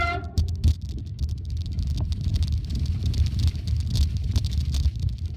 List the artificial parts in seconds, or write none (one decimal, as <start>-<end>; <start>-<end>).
0.0-5.4